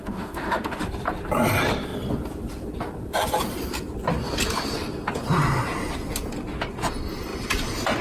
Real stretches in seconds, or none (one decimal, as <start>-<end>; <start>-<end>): 0.8-8.0